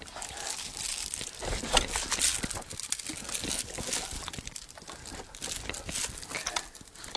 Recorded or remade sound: recorded